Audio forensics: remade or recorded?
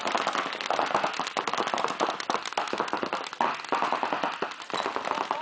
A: recorded